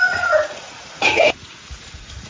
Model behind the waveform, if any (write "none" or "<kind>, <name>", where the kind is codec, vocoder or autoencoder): vocoder, Vocos